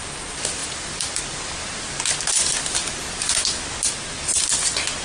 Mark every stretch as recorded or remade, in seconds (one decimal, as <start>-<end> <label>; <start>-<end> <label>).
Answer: 0.0-0.6 recorded; 0.6-1.2 remade; 1.2-2.8 recorded; 2.8-3.3 remade; 3.3-5.0 recorded